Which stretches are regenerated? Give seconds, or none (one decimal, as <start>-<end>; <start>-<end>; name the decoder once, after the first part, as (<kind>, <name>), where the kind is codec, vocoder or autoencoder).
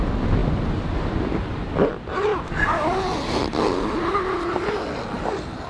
none